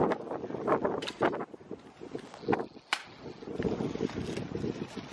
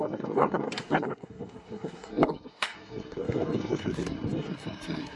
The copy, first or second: second